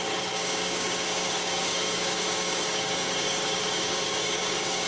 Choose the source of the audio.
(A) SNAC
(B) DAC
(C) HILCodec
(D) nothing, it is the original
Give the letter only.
B